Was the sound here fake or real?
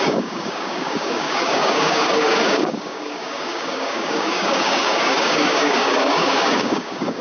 fake